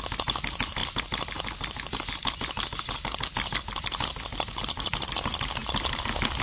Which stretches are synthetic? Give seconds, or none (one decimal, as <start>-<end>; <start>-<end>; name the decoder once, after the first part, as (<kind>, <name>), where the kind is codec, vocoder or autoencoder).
none